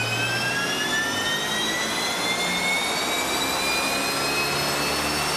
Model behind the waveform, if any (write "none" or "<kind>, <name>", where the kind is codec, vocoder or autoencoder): none